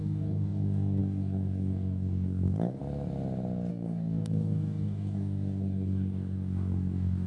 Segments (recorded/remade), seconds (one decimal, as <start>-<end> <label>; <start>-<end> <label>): 0.0-2.8 remade; 2.8-3.7 recorded; 3.7-7.3 remade